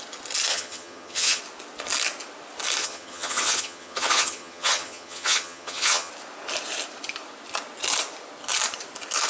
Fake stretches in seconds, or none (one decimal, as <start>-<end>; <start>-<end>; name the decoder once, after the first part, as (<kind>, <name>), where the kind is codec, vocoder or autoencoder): 0.5-1.4 (vocoder, HiFi-GAN); 2.8-6.1